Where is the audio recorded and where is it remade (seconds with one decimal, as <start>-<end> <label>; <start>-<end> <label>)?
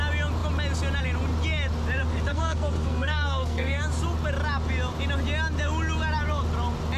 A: 0.0-2.3 recorded; 2.3-3.8 remade; 3.8-7.0 recorded